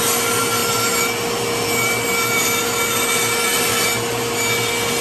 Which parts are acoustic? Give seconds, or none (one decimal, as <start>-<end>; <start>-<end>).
0.0-5.0